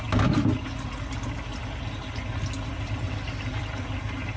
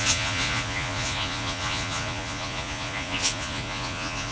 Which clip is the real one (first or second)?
first